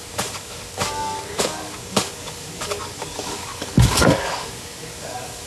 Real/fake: fake